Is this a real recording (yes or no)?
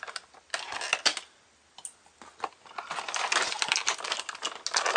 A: yes